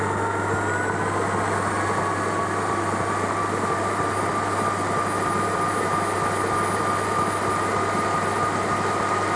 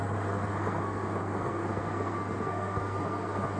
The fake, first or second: second